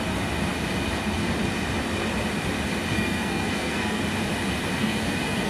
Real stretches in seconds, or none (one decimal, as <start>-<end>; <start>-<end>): 0.0-2.9; 4.0-4.8